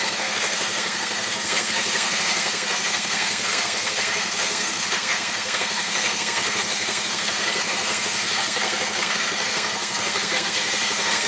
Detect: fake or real fake